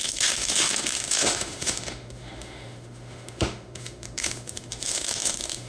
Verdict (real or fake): fake